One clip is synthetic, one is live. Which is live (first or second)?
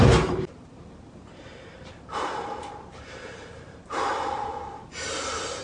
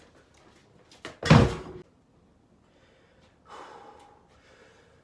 second